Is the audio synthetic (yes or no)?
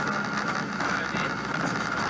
no